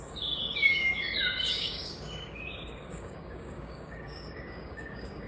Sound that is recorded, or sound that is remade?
remade